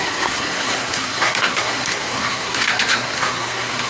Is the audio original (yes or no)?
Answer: no